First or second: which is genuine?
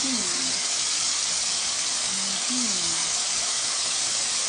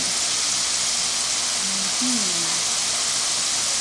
second